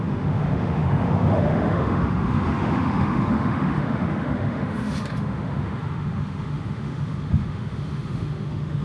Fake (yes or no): yes